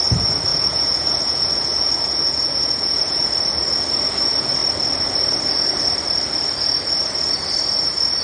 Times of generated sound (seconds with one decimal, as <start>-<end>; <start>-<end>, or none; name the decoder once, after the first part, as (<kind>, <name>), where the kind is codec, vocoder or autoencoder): 0.5-3.3 (vocoder, Vocos)